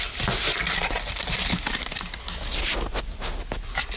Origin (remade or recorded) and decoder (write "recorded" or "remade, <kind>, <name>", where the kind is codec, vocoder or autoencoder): recorded